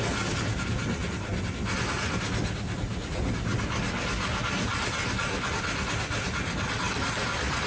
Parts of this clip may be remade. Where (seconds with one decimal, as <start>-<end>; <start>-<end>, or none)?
none